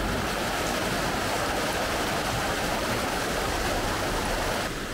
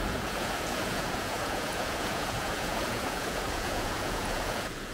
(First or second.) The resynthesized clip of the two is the second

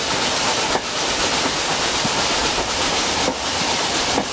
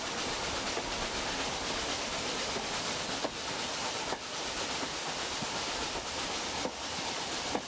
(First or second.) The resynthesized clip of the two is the second